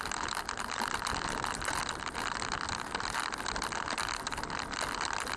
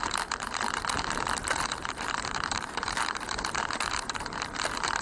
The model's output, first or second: second